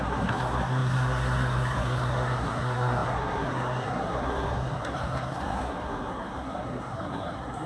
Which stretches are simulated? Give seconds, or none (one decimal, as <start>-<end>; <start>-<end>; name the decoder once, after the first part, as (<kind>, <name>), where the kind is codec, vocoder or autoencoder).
0.0-7.7 (codec, SNAC)

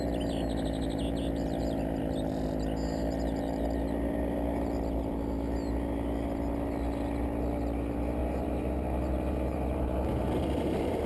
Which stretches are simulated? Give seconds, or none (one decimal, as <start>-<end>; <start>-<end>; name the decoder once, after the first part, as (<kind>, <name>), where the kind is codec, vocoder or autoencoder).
8.2-11.1 (vocoder, BigVGAN v2)

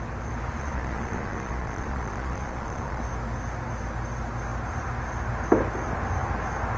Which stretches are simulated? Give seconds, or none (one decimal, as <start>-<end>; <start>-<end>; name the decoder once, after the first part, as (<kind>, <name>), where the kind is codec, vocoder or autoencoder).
0.6-3.0 (vocoder, Vocos)

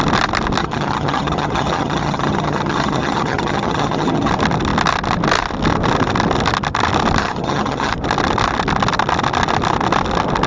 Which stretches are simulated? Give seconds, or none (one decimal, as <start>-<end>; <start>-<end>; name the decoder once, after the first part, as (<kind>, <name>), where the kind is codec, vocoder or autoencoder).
0.6-4.3 (vocoder, HiFi-GAN); 7.2-7.9

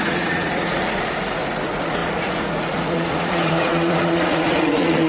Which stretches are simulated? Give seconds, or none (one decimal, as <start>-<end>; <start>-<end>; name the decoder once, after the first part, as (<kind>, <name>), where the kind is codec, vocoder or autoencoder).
0.0-5.1 (vocoder, Vocos)

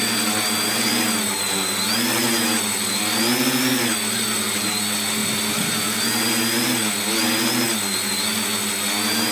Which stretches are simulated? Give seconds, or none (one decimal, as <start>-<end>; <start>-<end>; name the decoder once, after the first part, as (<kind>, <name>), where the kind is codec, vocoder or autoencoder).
none

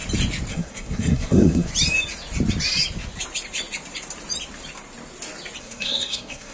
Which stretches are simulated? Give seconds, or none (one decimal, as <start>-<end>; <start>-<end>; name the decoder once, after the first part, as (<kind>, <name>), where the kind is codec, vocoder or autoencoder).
0.5-1.7 (codec, SNAC); 5.6-6.5

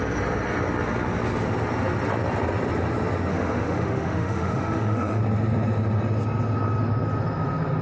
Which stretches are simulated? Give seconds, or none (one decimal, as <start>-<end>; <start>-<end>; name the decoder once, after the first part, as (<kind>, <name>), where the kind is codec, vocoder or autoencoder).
3.3-5.2 (autoencoder, DAC-VAE)